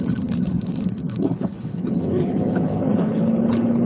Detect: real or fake fake